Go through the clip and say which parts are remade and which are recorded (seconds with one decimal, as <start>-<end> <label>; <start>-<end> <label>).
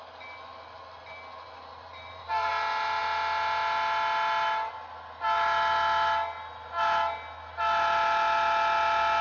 0.0-1.7 recorded; 1.7-2.5 remade; 2.5-9.2 recorded